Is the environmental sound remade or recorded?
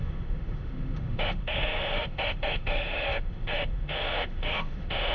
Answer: remade